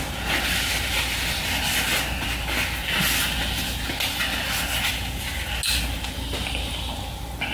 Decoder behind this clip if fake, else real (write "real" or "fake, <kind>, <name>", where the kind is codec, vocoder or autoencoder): real